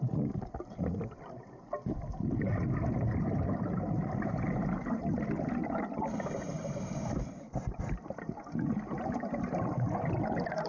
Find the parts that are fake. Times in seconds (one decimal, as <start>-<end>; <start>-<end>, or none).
5.6-8.2